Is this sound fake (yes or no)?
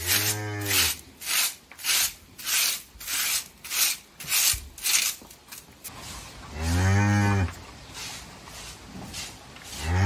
no